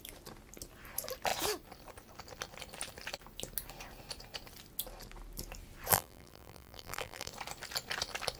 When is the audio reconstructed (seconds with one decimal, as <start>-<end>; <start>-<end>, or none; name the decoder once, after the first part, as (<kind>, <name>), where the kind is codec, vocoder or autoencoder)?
5.9-7.3 (vocoder, BigVGAN v2)